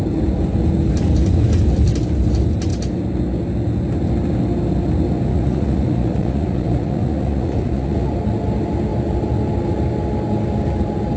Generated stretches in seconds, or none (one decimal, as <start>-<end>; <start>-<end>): 5.3-8.1